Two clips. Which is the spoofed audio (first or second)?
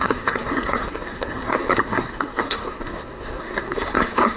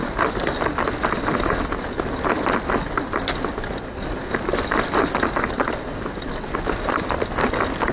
first